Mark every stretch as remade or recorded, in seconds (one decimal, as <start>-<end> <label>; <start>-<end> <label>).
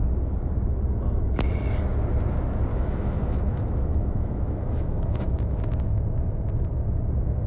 0.0-2.7 recorded; 2.7-5.6 remade; 5.6-7.5 recorded